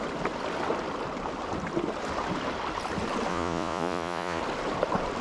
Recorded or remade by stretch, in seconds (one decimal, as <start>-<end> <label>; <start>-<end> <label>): 0.0-3.3 recorded; 3.3-4.4 remade; 4.4-5.2 recorded